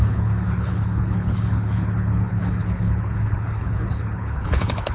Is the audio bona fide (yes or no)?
no